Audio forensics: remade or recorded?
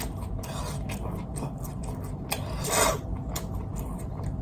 recorded